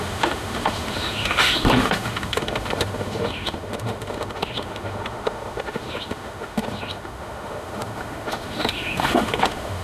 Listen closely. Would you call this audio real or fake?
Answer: fake